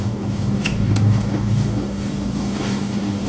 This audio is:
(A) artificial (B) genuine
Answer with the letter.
A